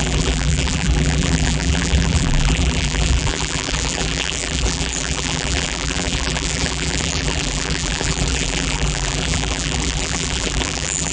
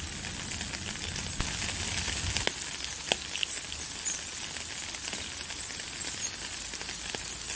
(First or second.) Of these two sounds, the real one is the second